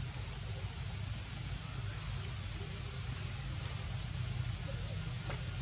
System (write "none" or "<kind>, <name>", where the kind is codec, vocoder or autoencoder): none